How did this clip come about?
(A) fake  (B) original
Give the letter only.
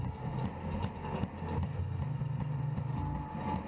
B